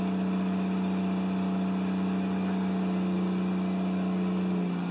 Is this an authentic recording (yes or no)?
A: yes